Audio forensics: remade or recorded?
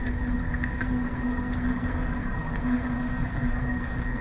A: remade